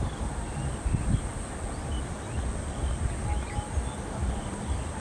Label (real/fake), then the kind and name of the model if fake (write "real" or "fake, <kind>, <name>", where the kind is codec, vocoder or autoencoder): real